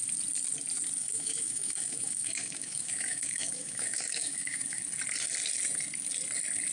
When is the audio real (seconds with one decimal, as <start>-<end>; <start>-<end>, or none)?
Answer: 0.0-1.0; 4.8-6.7